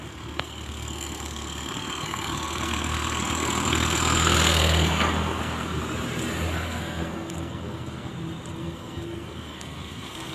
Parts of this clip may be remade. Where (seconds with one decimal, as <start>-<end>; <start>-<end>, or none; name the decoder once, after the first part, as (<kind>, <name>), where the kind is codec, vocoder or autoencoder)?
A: 0.0-5.8 (codec, SNAC); 6.5-8.1; 8.6-10.3